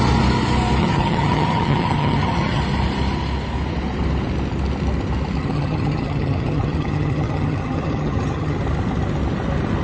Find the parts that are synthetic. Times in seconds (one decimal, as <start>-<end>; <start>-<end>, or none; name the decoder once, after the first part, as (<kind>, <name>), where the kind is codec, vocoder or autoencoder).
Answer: 0.8-2.6 (vocoder, HiFi-GAN); 5.4-8.6

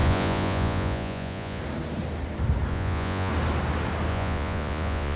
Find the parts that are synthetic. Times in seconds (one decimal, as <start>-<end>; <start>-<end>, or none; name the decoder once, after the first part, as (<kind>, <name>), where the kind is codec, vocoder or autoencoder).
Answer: 0.0-1.6 (vocoder, Vocos); 2.7-3.3; 4.1-5.2